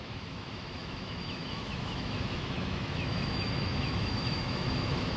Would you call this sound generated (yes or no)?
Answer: yes